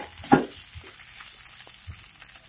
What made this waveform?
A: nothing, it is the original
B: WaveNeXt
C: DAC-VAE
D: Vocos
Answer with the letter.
A